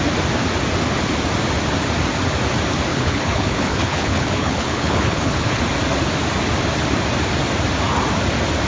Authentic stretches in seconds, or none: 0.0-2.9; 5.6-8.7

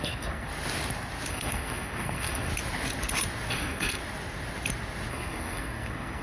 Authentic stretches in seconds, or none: 0.5-1.3; 2.5-3.5; 4.0-5.1

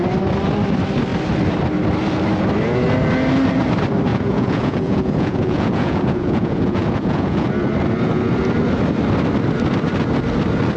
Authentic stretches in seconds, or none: 0.0-4.1; 7.5-10.8